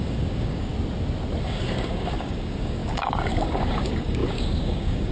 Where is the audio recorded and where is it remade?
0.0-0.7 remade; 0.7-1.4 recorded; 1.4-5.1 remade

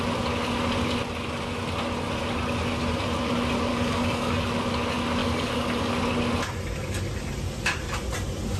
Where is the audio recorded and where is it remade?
0.0-3.7 recorded; 3.7-4.5 remade; 4.5-5.2 recorded; 5.2-5.9 remade; 5.9-8.6 recorded

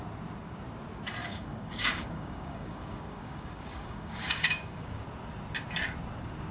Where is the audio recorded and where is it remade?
0.0-1.2 recorded; 1.2-5.0 remade; 5.0-6.5 recorded

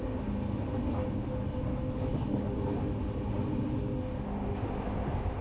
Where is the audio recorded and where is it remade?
0.0-5.4 recorded

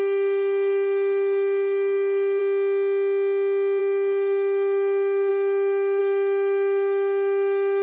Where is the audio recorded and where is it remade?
0.0-2.4 remade; 2.4-3.8 recorded; 3.8-7.8 remade

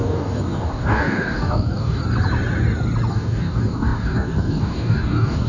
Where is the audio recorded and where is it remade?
0.0-2.0 remade; 2.0-3.1 recorded; 3.1-5.5 remade